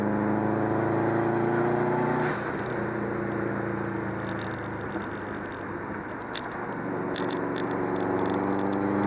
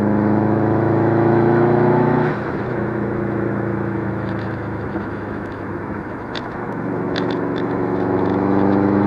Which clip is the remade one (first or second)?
second